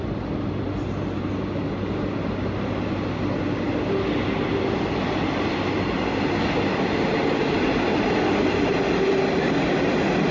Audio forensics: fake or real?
real